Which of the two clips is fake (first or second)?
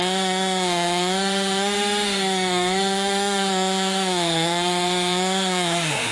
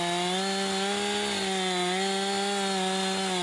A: first